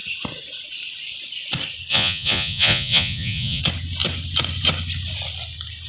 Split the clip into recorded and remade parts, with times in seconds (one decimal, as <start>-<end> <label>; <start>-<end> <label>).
0.0-1.9 recorded; 1.9-3.6 remade; 3.6-5.9 recorded